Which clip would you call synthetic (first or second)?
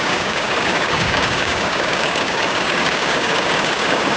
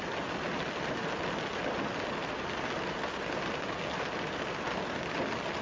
first